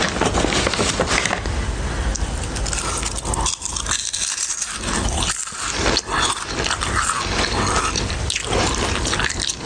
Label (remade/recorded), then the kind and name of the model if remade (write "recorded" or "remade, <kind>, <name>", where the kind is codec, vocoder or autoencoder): recorded